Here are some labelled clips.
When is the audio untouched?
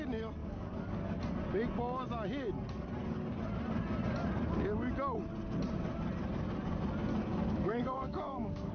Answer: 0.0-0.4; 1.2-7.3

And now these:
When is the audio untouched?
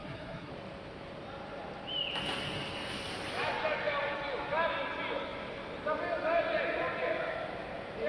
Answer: 0.5-8.1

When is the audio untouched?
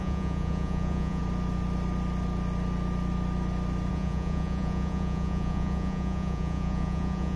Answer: 1.2-3.9